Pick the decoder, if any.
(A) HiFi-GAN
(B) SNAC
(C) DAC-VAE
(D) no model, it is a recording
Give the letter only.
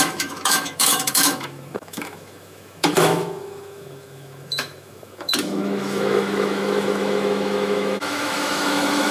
C